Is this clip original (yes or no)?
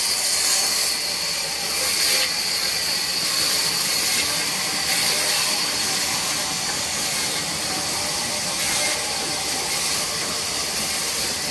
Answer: yes